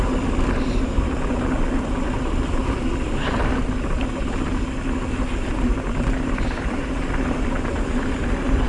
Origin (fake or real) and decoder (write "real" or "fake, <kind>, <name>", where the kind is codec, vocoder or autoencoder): real